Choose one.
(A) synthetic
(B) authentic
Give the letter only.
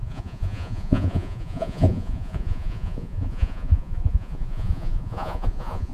A